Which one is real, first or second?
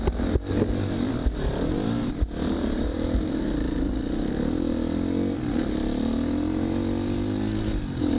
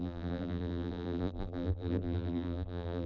first